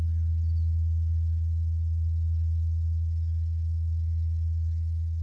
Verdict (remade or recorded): recorded